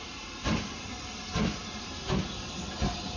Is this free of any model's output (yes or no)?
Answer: yes